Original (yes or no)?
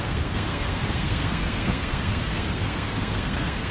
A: no